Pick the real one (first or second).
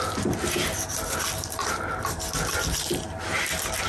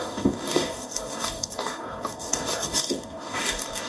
first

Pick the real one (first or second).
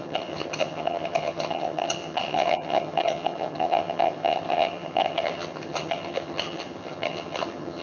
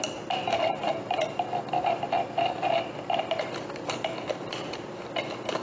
second